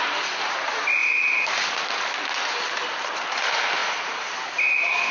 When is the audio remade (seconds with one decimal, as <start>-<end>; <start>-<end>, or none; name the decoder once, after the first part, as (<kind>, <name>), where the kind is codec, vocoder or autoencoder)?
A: none